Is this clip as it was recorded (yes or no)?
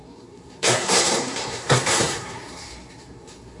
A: no